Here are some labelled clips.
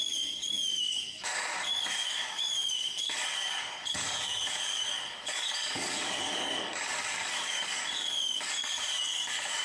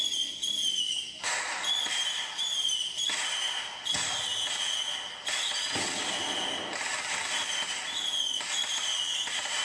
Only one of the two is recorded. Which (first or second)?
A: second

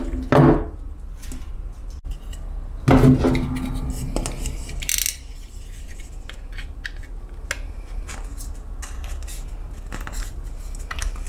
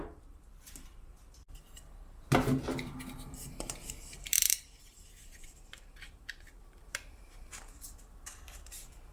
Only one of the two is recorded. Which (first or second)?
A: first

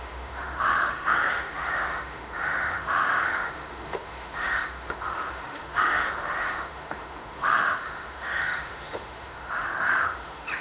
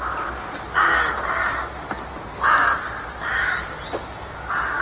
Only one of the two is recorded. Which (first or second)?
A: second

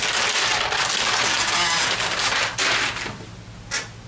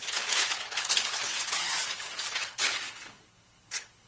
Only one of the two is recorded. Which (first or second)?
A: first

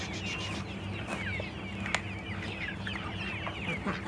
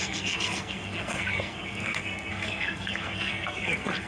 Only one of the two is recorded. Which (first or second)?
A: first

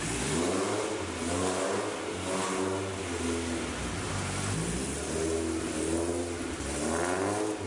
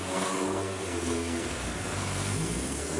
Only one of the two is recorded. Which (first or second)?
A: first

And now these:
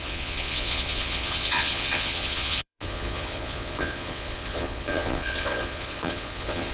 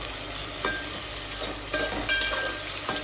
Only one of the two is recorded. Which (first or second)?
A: second